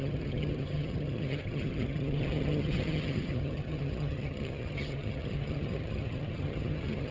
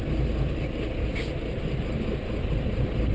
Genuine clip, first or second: second